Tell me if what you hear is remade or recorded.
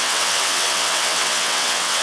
remade